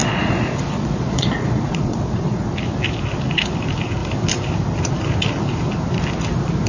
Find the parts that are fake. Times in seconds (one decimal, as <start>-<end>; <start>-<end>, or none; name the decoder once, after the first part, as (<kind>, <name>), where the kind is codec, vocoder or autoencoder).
0.0-2.5 (vocoder, Vocos)